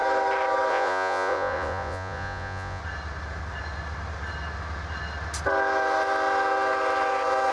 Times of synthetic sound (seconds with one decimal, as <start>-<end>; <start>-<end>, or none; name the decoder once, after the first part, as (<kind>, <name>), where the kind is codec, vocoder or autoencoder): 0.7-2.8 (vocoder, Vocos)